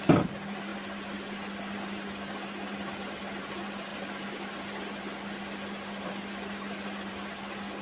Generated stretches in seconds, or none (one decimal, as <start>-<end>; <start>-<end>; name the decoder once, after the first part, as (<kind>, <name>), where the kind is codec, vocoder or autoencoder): none